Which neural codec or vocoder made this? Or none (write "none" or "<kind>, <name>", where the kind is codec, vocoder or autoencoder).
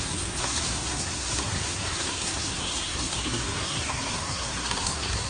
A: codec, SNAC